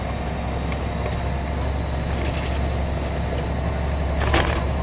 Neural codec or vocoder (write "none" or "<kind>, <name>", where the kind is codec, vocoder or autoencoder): none